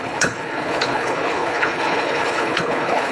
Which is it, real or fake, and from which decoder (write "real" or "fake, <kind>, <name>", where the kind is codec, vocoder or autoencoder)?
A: fake, codec, HILCodec